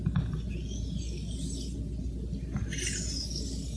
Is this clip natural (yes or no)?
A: yes